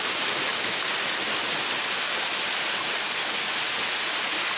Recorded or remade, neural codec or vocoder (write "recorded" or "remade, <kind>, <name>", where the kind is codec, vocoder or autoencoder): recorded